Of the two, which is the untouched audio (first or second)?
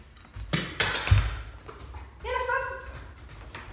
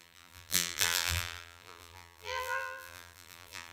first